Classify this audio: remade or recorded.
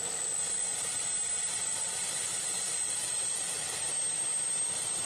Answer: recorded